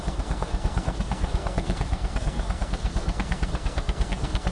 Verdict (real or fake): fake